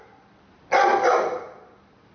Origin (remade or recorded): recorded